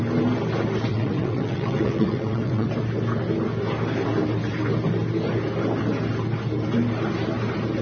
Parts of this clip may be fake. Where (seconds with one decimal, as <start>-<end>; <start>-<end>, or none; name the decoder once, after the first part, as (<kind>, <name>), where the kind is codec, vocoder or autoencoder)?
0.9-2.7 (vocoder, WaveNeXt)